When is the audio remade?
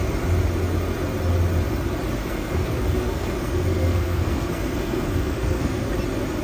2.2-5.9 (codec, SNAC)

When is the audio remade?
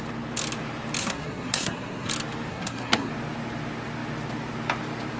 1.0-2.1 (codec, SNAC); 2.5-3.1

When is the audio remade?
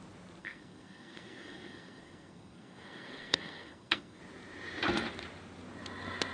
0.4-4.2 (codec, SNAC)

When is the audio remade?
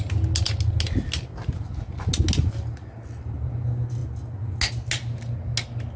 none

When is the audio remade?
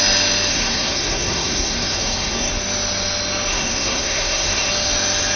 0.5-2.5 (codec, SNAC); 3.5-4.7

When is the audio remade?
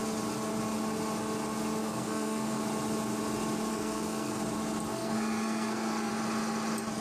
1.8-2.6 (codec, SNAC); 3.7-4.4; 4.9-6.1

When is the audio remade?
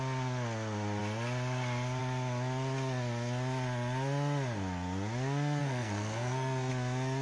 5.6-6.7 (codec, SNAC)